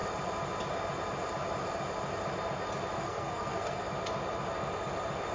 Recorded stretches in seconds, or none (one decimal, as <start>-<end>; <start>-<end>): 0.0-3.0; 3.8-5.3